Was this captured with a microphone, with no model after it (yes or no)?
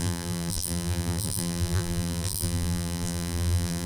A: no